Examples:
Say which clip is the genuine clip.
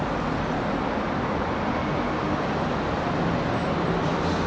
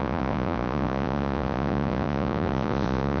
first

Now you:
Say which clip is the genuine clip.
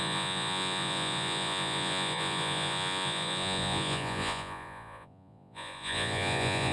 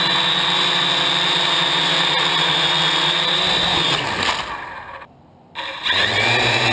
second